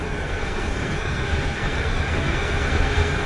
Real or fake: fake